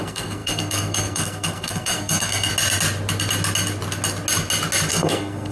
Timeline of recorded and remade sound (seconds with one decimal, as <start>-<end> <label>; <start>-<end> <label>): 0.0-2.5 remade; 2.5-4.9 recorded; 4.9-5.5 remade